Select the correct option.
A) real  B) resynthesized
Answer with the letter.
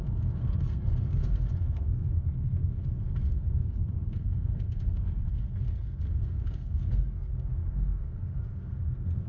B